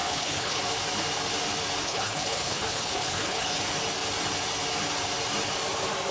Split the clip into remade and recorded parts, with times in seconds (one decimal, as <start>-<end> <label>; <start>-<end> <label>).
0.0-0.6 remade; 0.6-1.8 recorded; 1.8-3.6 remade; 3.6-6.1 recorded